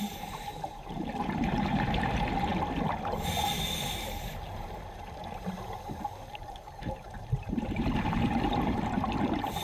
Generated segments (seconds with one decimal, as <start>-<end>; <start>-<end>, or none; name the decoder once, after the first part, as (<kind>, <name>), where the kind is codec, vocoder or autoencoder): 0.0-2.5 (vocoder, BigVGAN v2); 6.8-9.6